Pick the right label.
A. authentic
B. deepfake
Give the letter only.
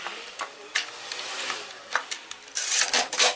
B